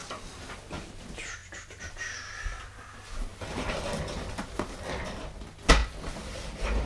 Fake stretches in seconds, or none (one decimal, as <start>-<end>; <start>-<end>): 1.4-2.6; 5.8-6.9